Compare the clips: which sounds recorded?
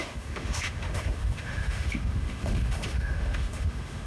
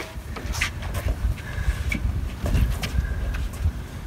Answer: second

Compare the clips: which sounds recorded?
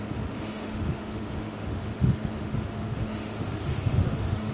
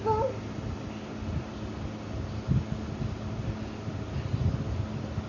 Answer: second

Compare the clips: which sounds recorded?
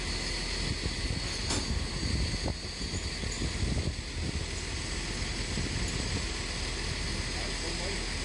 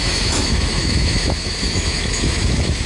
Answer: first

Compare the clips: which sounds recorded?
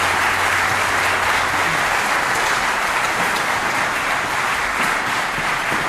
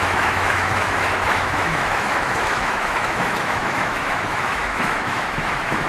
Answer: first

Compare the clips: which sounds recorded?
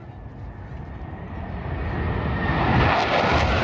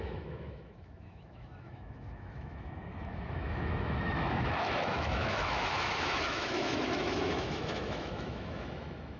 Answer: first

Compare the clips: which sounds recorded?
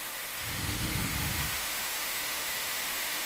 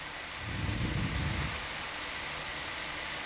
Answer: second